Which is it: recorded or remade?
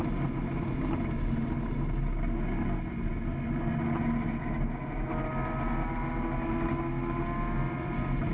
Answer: recorded